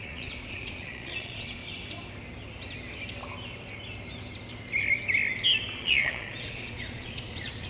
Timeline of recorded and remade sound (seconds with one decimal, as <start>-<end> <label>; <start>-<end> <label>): 0.0-1.6 remade; 1.6-5.8 recorded; 5.8-7.7 remade